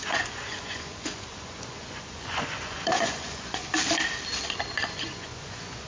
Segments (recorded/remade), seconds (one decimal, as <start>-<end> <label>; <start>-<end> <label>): 0.0-3.7 remade; 3.7-4.7 recorded; 4.7-5.9 remade